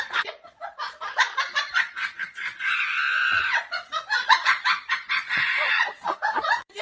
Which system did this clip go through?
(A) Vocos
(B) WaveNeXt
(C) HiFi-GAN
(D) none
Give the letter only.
A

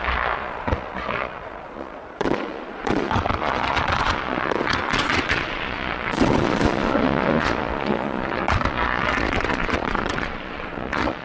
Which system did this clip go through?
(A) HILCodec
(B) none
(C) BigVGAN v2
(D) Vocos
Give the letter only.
D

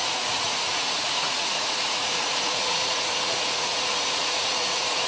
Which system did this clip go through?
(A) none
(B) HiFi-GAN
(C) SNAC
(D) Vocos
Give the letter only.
D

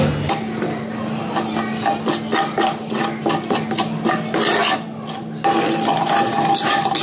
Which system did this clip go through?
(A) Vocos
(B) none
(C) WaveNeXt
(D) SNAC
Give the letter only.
B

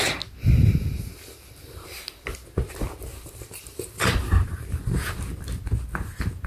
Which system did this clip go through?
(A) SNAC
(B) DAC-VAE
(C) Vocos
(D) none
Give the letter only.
D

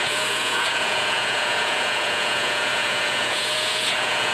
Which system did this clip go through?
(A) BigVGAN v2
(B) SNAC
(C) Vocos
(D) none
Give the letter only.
C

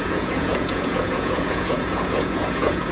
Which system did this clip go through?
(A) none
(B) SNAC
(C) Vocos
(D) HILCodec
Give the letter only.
C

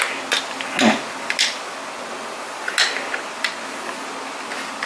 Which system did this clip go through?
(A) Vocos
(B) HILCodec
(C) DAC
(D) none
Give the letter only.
D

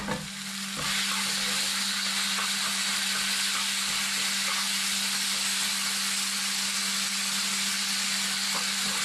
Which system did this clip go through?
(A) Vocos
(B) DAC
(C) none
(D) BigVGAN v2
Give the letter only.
C